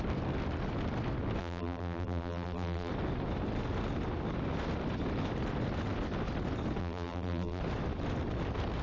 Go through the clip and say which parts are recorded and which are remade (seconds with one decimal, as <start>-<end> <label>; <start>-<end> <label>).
0.0-1.4 recorded; 1.4-2.9 remade; 2.9-6.8 recorded; 6.8-7.6 remade; 7.6-8.8 recorded